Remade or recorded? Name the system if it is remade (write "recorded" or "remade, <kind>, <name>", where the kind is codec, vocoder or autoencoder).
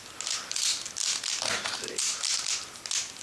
recorded